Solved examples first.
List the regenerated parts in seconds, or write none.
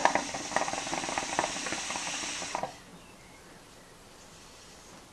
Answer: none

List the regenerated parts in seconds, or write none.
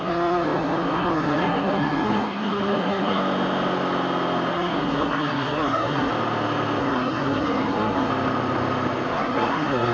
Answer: 0.0-3.2 (codec, SNAC); 4.5-6.1; 6.8-8.1; 9.1-9.9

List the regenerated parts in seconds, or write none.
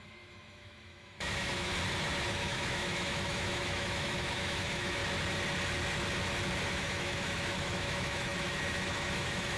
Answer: 0.0-1.7 (autoencoder, DAC-VAE); 2.3-5.0; 6.7-9.6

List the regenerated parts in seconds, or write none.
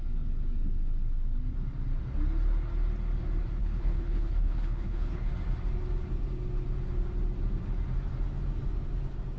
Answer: 3.6-5.3 (codec, HILCodec)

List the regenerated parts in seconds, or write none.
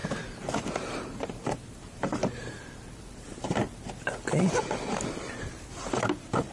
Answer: 0.0-3.6 (vocoder, BigVGAN v2); 4.4-6.5